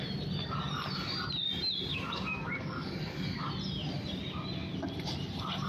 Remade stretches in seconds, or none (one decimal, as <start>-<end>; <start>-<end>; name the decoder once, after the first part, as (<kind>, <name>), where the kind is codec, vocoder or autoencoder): 1.9-3.5 (codec, DAC)